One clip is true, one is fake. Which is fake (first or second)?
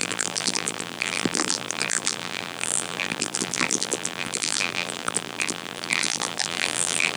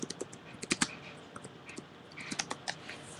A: first